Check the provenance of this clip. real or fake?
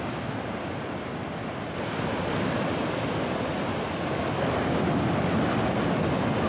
real